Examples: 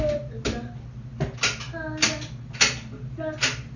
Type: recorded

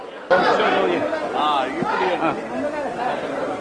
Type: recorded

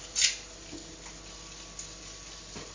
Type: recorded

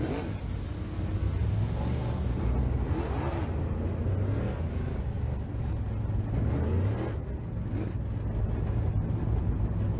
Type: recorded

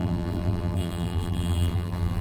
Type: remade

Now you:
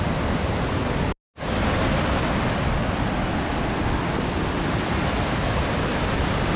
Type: recorded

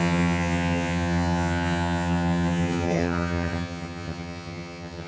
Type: remade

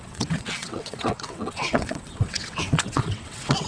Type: remade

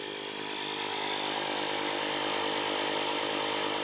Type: recorded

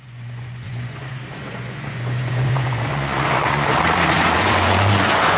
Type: remade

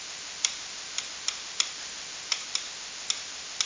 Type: recorded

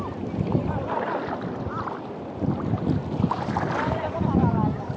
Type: recorded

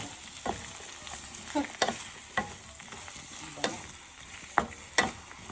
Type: recorded